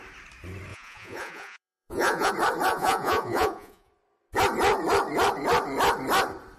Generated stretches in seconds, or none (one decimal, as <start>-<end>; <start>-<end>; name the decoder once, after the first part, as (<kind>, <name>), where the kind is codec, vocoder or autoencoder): 0.7-2.3 (vocoder, Vocos); 2.7-3.9